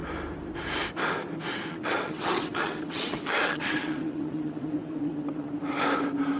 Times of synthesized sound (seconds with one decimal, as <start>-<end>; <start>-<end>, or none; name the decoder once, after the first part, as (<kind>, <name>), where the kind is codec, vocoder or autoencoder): 1.7-5.5 (vocoder, WaveNeXt)